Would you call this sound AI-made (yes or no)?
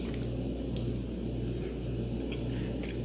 no